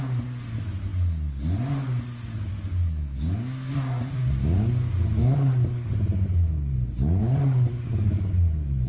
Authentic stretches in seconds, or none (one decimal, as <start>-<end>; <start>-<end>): 0.0-2.5; 3.7-5.2; 5.9-7.2; 8.3-8.9